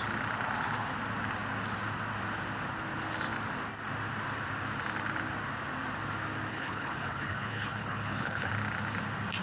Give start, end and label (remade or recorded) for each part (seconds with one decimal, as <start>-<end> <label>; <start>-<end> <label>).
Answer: 0.0-6.5 recorded; 6.5-8.5 remade; 8.5-9.4 recorded